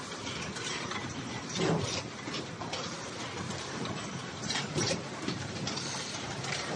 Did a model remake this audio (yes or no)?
yes